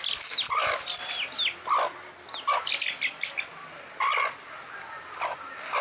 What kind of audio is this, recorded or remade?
recorded